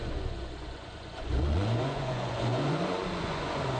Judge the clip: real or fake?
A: fake